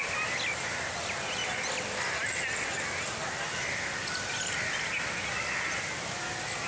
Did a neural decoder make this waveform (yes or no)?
no